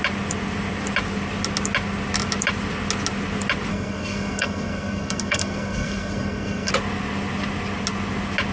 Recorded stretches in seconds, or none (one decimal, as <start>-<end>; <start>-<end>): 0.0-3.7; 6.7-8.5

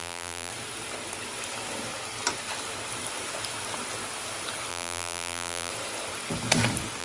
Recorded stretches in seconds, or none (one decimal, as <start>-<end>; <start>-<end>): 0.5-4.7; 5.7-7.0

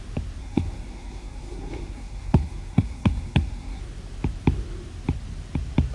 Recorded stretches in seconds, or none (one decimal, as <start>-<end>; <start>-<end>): 0.0-0.4; 3.8-5.9

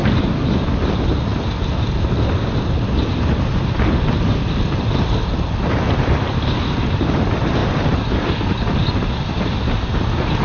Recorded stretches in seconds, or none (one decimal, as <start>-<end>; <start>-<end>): 0.0-10.4

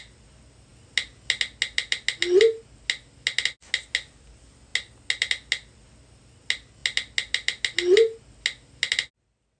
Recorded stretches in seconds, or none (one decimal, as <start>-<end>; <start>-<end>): 0.0-9.6

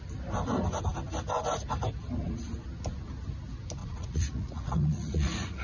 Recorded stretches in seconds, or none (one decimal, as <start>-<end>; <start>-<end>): 0.0-3.8

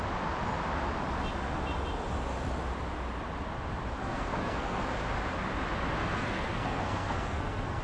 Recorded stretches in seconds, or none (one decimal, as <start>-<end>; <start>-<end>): 0.0-4.0; 4.8-6.0